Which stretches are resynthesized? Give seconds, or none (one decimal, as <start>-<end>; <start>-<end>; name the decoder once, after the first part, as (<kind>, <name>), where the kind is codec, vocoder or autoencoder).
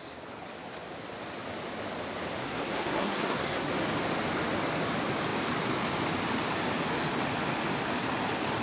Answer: 2.4-3.7 (codec, SNAC)